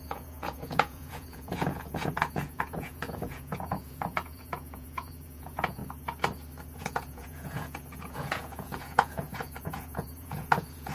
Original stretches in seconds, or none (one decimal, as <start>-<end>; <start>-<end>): 5.8-6.8